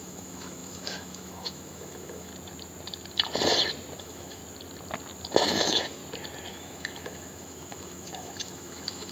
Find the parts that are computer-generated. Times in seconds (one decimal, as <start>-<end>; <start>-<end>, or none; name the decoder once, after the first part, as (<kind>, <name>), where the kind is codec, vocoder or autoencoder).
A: 0.0-2.3 (autoencoder, DAC-VAE); 4.0-4.4; 5.5-6.0; 6.5-9.1